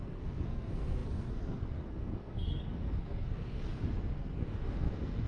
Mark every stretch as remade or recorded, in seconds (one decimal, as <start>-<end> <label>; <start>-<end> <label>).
0.0-5.3 remade